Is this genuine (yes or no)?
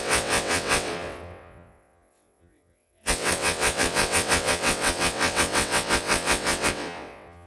no